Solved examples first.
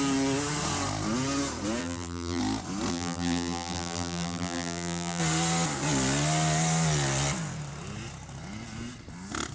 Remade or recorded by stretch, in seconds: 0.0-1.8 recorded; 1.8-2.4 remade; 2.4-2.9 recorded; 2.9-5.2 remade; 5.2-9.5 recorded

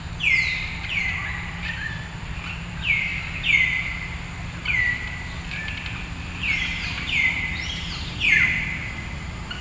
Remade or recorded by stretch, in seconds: 0.0-3.1 remade; 3.1-5.5 recorded; 5.5-9.6 remade

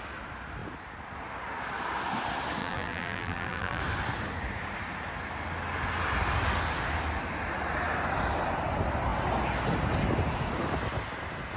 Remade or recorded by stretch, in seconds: 0.0-2.6 recorded; 2.6-3.8 remade; 3.8-11.6 recorded